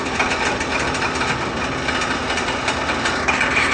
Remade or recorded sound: recorded